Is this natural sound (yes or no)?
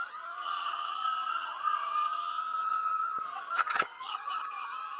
no